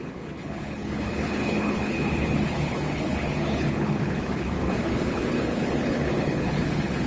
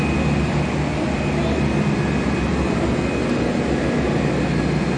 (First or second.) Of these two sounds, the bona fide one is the second